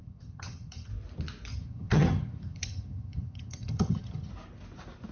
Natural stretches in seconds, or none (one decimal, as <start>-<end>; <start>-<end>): 0.9-1.5; 4.3-5.1